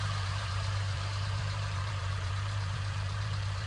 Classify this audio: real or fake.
fake